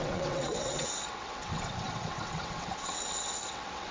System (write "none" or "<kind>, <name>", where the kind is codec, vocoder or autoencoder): vocoder, WaveNeXt